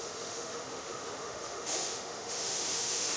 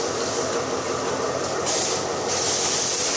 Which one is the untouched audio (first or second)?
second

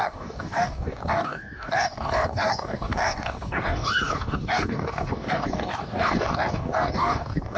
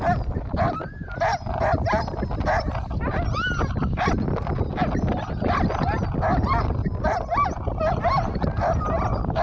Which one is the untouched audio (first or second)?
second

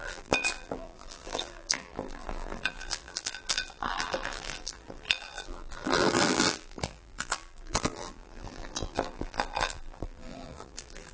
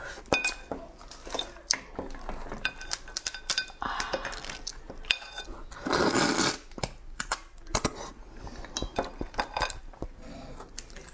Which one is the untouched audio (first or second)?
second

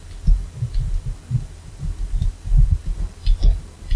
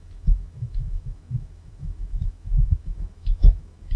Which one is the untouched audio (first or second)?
first